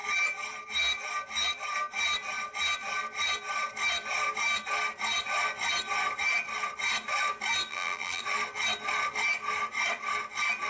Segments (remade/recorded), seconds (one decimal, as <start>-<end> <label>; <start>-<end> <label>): 0.0-7.7 recorded; 7.7-8.2 remade; 8.2-10.7 recorded